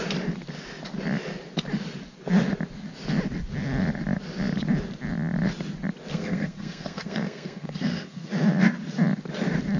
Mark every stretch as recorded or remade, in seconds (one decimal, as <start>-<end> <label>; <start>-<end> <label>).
0.0-6.1 recorded; 6.1-8.3 remade; 8.3-9.8 recorded